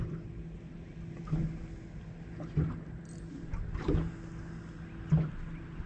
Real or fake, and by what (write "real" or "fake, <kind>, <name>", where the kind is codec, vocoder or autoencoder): real